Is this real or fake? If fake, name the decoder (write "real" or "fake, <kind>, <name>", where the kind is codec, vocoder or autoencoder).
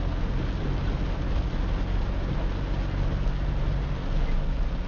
real